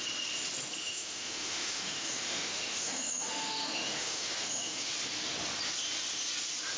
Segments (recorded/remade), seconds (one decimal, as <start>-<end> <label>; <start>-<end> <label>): 0.0-0.8 recorded; 0.8-4.9 remade; 4.9-6.8 recorded